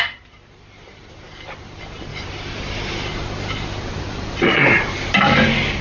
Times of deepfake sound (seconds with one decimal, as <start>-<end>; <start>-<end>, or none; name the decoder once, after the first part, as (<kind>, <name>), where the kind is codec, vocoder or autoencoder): none